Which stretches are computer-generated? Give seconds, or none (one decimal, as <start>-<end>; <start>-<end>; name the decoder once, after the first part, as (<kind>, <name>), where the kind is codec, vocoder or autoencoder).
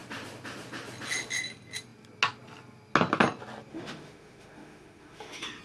3.7-5.6 (autoencoder, DAC-VAE)